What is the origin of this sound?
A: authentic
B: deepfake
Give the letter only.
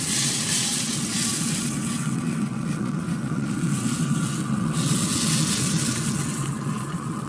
B